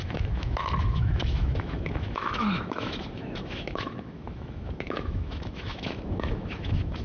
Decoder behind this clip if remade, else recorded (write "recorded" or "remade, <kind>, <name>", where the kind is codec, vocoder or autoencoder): remade, autoencoder, DAC-VAE